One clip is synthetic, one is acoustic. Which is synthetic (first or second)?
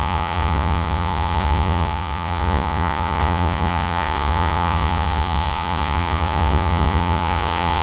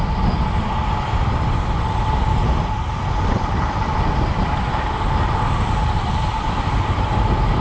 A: first